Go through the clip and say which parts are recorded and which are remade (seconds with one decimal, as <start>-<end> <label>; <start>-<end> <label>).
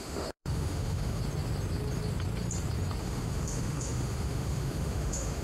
0.0-1.2 remade; 1.2-3.0 recorded; 3.0-5.4 remade